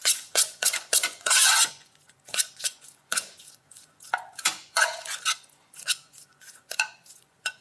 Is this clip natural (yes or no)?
no